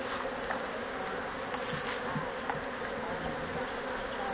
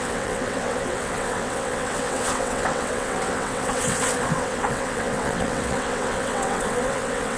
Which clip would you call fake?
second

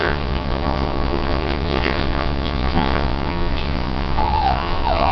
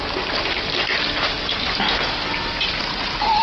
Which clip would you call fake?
first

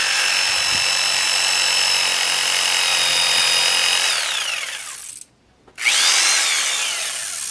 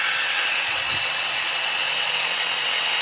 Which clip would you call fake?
second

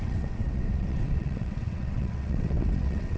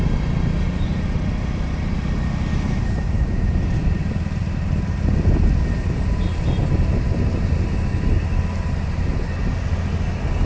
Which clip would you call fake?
first